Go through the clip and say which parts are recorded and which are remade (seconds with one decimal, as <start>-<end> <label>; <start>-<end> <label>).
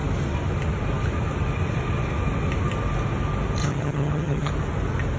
0.0-3.6 recorded; 3.6-4.5 remade; 4.5-5.2 recorded